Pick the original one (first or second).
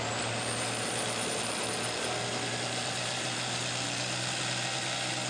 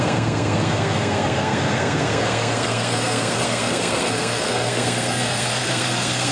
first